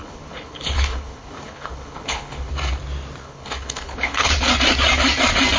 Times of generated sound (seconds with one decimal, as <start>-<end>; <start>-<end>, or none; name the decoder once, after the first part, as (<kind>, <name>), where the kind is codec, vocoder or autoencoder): 0.0-2.5 (codec, HILCodec); 3.2-4.3